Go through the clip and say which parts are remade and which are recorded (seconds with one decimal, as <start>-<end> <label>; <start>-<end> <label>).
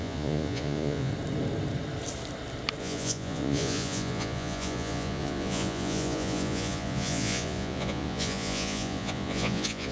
0.0-1.1 remade; 1.1-2.8 recorded; 2.8-9.9 remade